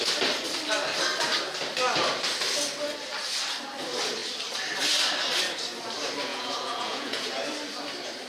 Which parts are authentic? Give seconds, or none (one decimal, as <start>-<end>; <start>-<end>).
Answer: 0.0-6.3; 7.3-8.3